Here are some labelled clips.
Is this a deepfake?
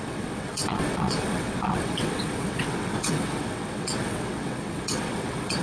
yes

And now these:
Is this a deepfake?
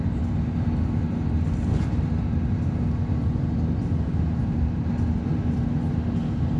no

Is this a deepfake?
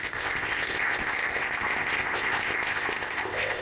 yes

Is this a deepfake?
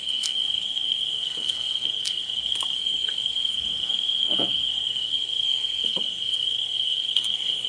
yes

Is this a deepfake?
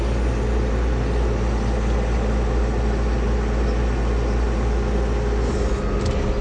no